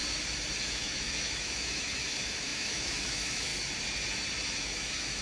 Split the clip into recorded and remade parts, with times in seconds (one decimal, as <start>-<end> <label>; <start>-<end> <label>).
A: 0.0-0.6 recorded; 0.6-3.5 remade; 3.5-4.6 recorded; 4.6-5.2 remade